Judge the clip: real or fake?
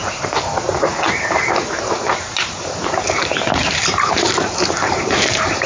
fake